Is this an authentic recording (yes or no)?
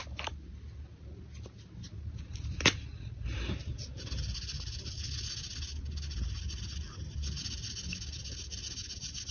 yes